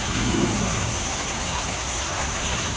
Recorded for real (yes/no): no